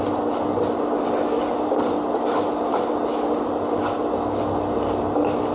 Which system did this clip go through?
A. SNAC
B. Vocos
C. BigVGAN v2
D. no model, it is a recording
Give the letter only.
D